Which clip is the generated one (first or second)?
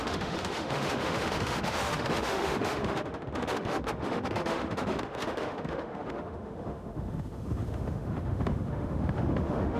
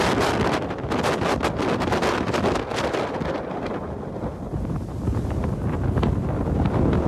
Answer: first